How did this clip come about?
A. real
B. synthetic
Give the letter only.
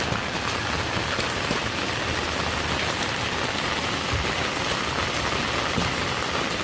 A